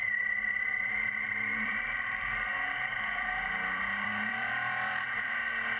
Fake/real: fake